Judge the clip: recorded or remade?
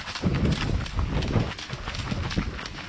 recorded